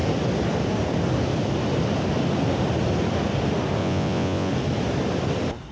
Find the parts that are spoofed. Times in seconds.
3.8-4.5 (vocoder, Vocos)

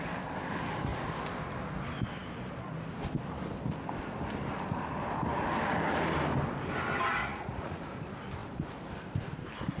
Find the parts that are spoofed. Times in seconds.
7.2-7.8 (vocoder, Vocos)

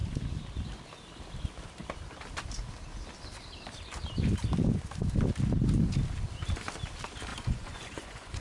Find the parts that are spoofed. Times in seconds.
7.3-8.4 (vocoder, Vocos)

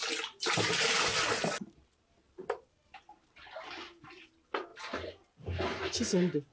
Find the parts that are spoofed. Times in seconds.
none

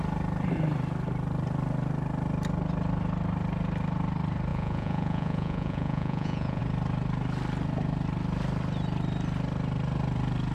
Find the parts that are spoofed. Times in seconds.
4.5-6.6 (vocoder, Vocos)